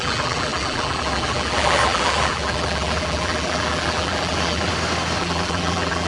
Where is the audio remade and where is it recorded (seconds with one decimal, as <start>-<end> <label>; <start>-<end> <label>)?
0.0-4.7 remade; 4.7-5.2 recorded; 5.2-6.1 remade